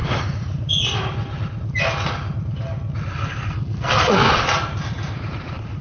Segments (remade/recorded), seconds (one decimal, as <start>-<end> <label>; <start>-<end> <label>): 0.0-3.1 recorded; 3.1-4.3 remade; 4.3-5.8 recorded